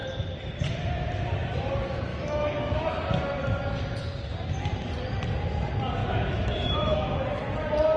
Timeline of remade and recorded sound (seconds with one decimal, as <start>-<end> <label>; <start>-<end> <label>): 0.0-2.1 recorded; 2.1-3.0 remade; 3.0-6.0 recorded; 6.0-7.5 remade; 7.5-8.0 recorded